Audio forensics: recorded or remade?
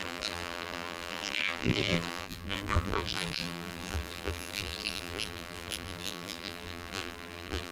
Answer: remade